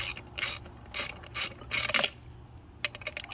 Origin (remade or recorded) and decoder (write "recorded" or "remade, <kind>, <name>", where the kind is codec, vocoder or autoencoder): recorded